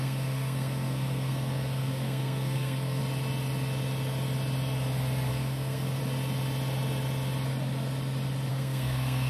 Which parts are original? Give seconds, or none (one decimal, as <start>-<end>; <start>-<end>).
3.0-5.3; 6.0-8.5